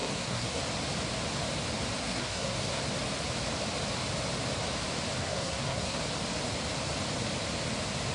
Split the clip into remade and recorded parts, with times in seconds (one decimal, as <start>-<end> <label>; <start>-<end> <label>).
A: 0.0-0.6 remade; 0.6-2.0 recorded; 2.0-2.8 remade; 2.8-5.2 recorded; 5.2-6.0 remade; 6.0-8.1 recorded